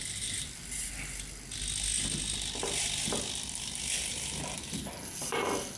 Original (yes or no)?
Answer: yes